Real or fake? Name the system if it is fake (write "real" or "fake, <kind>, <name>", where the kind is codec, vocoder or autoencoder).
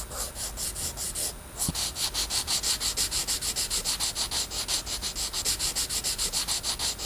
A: real